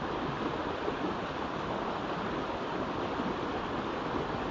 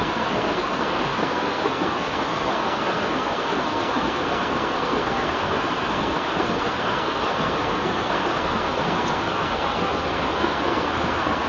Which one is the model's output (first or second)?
second